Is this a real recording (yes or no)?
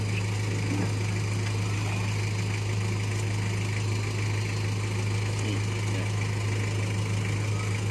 yes